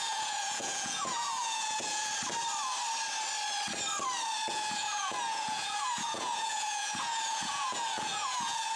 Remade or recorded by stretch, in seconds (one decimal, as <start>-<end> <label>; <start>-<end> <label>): 0.0-2.1 remade; 2.1-4.5 recorded; 4.5-8.8 remade

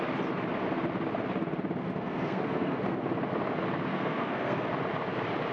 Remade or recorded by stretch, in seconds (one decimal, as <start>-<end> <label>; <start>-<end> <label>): 0.0-1.8 recorded; 1.8-3.0 remade; 3.0-3.9 recorded; 3.9-4.7 remade; 4.7-5.5 recorded

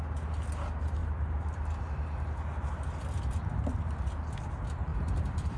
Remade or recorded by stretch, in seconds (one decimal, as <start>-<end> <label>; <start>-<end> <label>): 0.0-4.9 recorded; 4.9-5.6 remade

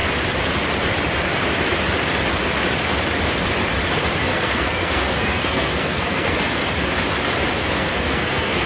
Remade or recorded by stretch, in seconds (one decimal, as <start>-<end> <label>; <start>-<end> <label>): 0.0-4.3 recorded; 4.3-6.6 remade; 6.6-7.6 recorded; 7.6-8.7 remade